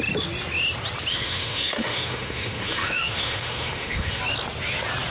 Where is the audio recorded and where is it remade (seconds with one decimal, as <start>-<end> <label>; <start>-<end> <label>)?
0.0-1.1 recorded; 1.1-4.2 remade; 4.2-5.1 recorded